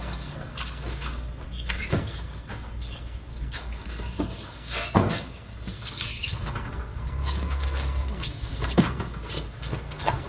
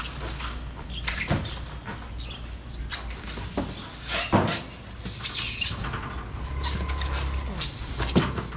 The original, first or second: second